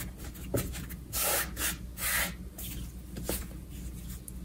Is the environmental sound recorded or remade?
recorded